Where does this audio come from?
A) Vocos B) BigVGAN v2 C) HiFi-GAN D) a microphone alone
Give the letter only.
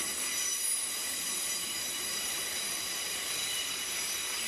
B